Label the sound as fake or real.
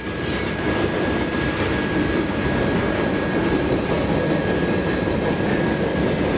real